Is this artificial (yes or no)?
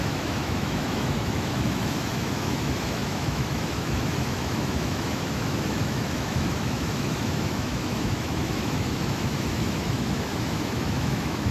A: yes